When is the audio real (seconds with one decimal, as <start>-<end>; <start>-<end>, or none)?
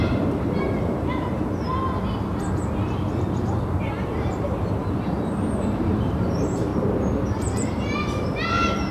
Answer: 1.7-3.1; 6.7-7.3